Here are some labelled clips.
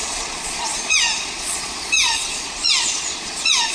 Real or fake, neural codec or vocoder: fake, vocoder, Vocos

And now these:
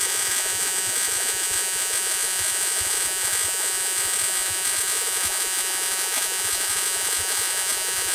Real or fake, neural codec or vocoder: fake, vocoder, Vocos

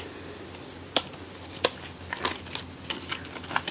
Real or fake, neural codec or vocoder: real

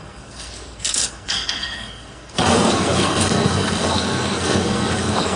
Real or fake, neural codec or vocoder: fake, codec, SNAC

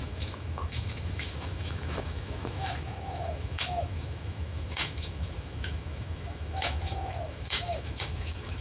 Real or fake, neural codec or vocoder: fake, autoencoder, DAC-VAE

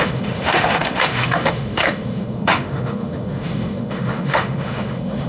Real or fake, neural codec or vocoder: fake, autoencoder, DAC-VAE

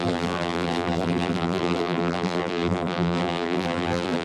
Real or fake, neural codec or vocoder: fake, vocoder, BigVGAN v2